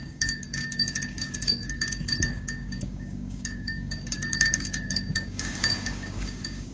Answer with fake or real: fake